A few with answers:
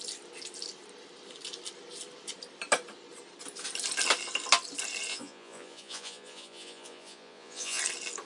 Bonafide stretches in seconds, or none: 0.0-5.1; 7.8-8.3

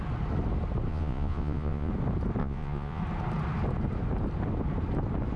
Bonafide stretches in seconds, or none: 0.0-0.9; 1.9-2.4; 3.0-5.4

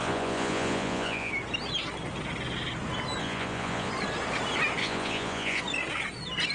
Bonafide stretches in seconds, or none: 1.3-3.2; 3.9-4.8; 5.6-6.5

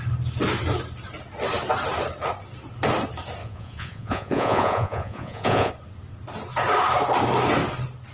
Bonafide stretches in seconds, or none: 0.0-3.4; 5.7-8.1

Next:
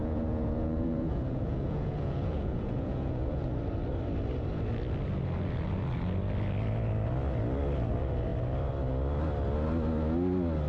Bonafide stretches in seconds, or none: 3.5-10.7

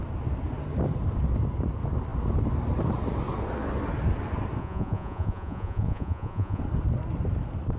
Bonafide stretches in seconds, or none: 0.0-4.6; 6.6-7.8

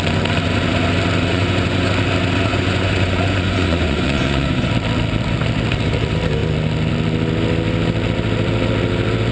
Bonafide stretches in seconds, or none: 0.0-1.3; 1.9-2.5; 4.7-9.3